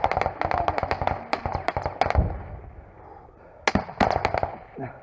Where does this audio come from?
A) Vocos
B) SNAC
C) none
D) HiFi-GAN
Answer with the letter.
C